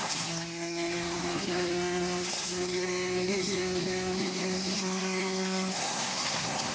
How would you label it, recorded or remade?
remade